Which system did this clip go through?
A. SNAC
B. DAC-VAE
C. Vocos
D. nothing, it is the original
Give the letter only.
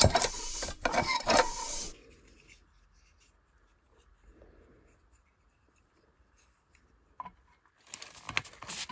D